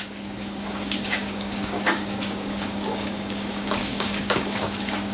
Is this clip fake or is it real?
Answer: fake